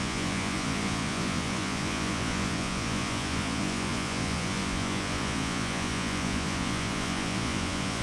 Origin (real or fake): fake